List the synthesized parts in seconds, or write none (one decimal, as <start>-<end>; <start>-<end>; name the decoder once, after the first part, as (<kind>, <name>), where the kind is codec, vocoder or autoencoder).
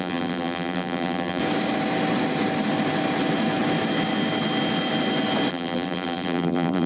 0.0-1.4 (vocoder, BigVGAN v2); 5.5-6.9